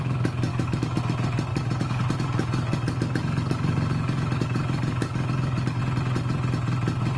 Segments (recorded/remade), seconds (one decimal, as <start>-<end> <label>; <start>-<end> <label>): 0.0-0.5 recorded; 0.5-1.0 remade; 1.0-1.5 recorded; 1.5-5.8 remade; 5.8-7.2 recorded